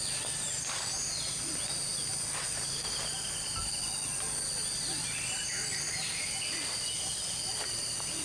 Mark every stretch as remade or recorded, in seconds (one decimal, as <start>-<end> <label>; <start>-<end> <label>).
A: 0.0-5.4 recorded; 5.4-6.1 remade; 6.1-8.2 recorded